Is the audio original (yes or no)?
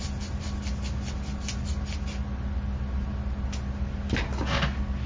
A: yes